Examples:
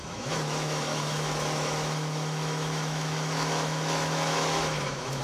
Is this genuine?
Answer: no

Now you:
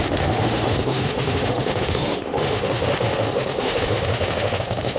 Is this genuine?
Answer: no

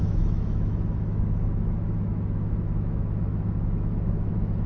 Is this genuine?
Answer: no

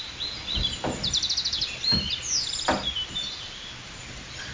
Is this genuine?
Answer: yes